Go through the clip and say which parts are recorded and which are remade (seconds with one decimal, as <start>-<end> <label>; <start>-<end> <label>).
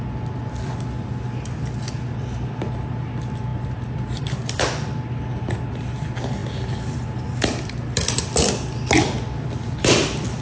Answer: 0.0-10.4 recorded